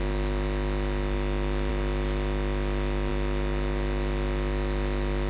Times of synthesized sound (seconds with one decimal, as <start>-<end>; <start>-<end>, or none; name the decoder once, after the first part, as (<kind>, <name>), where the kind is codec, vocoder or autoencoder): none